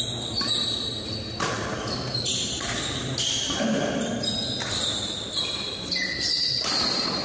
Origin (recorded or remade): recorded